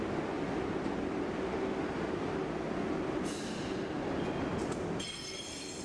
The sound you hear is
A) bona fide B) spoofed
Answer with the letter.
A